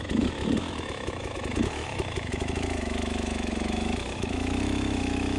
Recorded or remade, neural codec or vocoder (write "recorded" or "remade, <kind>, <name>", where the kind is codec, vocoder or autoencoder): remade, autoencoder, DAC-VAE